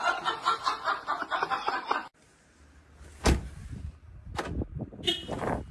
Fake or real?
real